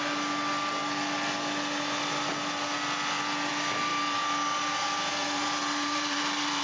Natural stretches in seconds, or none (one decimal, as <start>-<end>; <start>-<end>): 0.0-3.9